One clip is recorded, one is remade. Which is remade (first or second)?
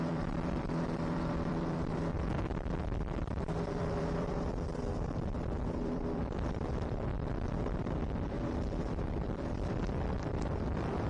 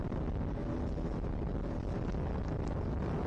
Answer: first